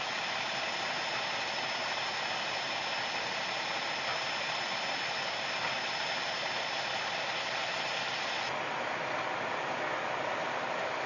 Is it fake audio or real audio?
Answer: real